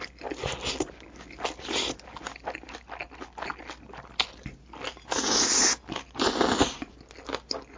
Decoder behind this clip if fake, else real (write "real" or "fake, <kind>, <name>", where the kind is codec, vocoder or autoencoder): real